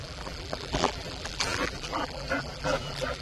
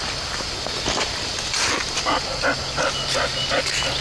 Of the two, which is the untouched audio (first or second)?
second